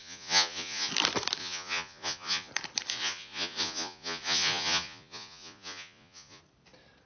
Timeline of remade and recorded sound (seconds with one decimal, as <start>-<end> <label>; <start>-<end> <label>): 0.0-0.9 remade; 0.9-1.4 recorded; 1.4-2.5 remade; 2.5-2.9 recorded; 2.9-6.4 remade; 6.4-7.1 recorded